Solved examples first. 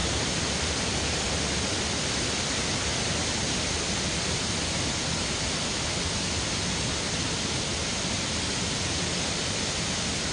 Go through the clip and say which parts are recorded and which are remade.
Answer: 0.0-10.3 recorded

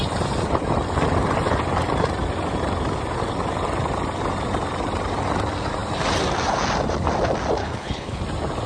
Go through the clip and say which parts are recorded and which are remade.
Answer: 0.0-7.6 recorded; 7.6-8.2 remade; 8.2-8.7 recorded

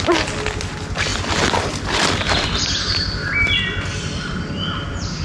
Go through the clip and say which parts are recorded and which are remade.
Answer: 0.0-5.2 recorded

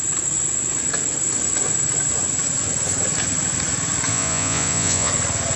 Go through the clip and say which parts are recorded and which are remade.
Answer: 0.0-4.1 recorded; 4.1-5.1 remade; 5.1-5.6 recorded

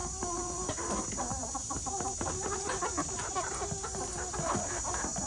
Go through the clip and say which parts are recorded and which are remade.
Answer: 0.0-0.7 remade; 0.7-5.3 recorded

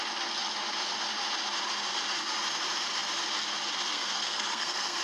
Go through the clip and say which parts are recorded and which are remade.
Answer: 0.0-3.9 recorded; 3.9-5.0 remade

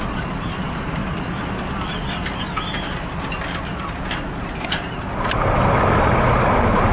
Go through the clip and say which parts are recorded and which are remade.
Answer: 0.0-1.0 remade; 1.0-4.9 recorded; 4.9-6.9 remade

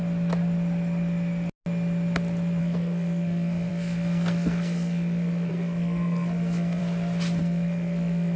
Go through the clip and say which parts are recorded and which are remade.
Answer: 0.0-2.6 recorded; 2.6-6.8 remade; 6.8-7.4 recorded; 7.4-8.4 remade